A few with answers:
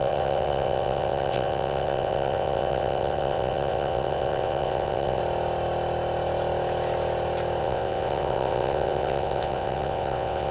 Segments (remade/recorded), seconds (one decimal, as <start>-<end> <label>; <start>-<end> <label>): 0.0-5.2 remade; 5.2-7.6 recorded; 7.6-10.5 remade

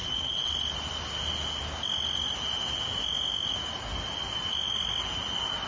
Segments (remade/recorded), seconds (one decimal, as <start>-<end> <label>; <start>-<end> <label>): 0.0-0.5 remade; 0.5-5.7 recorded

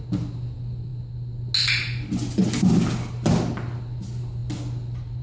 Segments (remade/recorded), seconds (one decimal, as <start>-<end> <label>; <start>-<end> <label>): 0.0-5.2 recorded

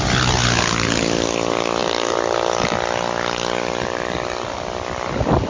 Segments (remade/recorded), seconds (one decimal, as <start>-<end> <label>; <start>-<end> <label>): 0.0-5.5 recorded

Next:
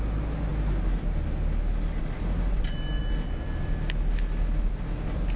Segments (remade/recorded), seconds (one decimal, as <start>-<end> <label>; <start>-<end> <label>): 0.0-5.4 recorded

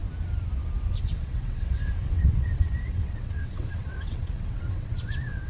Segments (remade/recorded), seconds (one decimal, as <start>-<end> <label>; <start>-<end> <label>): 0.0-1.0 recorded; 1.0-5.5 remade